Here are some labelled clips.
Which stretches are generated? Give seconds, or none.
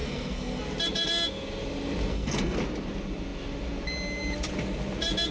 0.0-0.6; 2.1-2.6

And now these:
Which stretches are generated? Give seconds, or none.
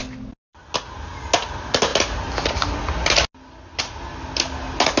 none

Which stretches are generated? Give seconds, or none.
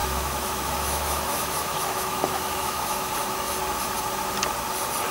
0.0-3.1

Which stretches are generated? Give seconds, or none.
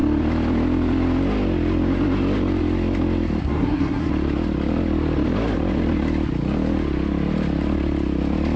3.4-4.1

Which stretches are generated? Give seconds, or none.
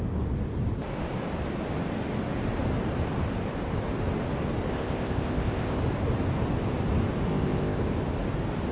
4.7-5.8; 7.3-7.8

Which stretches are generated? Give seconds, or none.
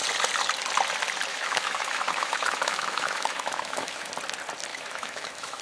1.3-4.1; 4.7-5.6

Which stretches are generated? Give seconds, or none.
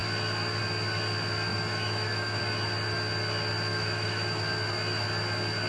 1.5-2.4; 3.7-4.4